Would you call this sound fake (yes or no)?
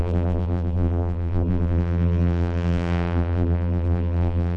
yes